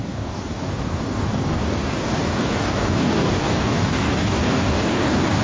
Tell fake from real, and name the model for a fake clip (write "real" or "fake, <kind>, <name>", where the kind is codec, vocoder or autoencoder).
fake, codec, DAC